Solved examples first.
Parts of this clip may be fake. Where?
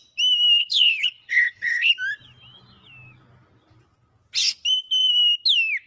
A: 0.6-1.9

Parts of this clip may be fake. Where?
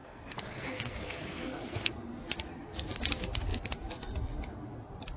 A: 0.0-1.9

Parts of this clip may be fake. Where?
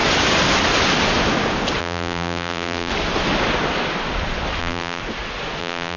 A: 1.8-2.9; 4.6-5.0; 5.6-6.0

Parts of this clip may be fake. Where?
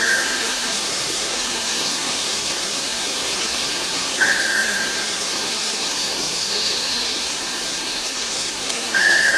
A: 0.0-9.4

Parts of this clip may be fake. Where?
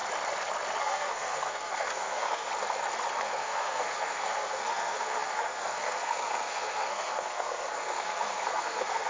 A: 0.8-2.5; 3.2-9.1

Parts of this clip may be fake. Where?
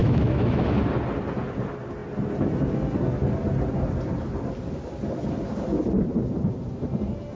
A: 0.0-0.6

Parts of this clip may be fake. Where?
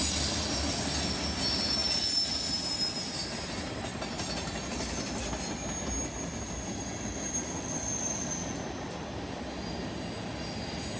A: none